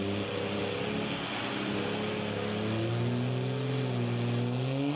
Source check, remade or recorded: recorded